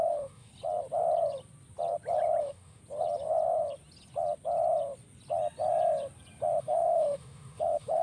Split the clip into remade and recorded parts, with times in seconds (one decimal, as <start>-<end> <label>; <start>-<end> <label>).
0.0-0.5 remade; 0.5-2.4 recorded; 2.4-2.8 remade; 2.8-6.6 recorded; 6.6-8.0 remade